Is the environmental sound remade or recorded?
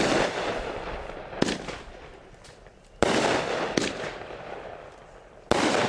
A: recorded